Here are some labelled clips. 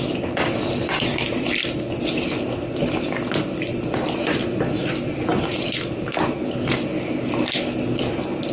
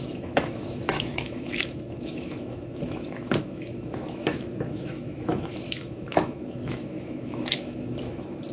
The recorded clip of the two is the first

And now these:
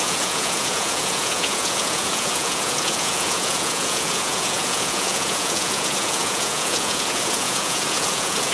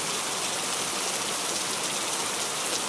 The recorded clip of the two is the second